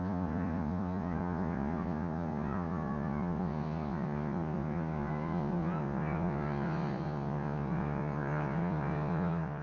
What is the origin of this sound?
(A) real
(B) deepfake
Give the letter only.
B